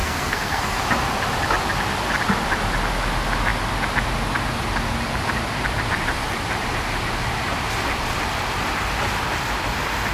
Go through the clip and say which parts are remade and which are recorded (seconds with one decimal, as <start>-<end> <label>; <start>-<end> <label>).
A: 0.0-0.8 remade; 0.8-10.1 recorded